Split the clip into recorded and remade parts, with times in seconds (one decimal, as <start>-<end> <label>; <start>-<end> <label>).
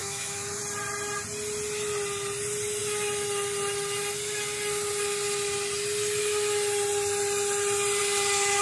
0.0-0.6 remade; 0.6-8.6 recorded